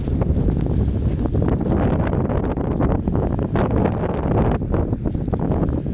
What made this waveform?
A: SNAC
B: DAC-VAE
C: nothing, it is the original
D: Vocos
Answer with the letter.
C